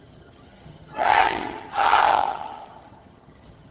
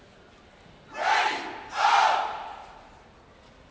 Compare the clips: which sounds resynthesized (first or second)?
first